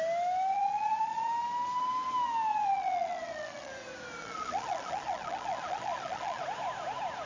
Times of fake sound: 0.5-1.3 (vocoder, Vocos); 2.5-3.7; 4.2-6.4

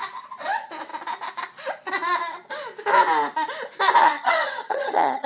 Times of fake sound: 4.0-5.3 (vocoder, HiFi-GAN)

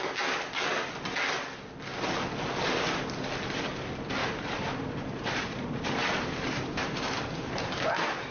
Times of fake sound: 4.2-7.3 (vocoder, BigVGAN v2)